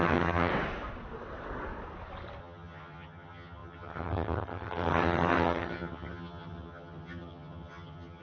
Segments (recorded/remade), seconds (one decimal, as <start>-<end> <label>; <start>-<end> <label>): 0.0-0.5 remade; 0.5-2.4 recorded; 2.4-8.2 remade